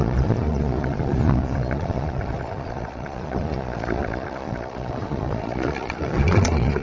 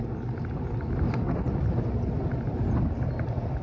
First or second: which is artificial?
first